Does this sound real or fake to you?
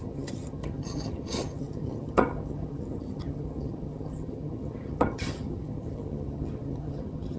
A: fake